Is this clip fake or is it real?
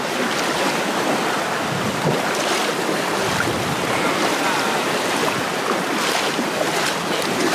real